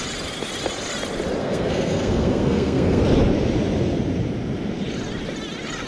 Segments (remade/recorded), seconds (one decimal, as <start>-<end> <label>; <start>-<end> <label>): 0.0-1.4 recorded; 1.4-3.0 remade; 3.0-5.9 recorded